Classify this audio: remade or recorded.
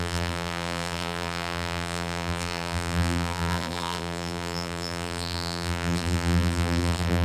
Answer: remade